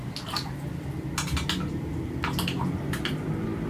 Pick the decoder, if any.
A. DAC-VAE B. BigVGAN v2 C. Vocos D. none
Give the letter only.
D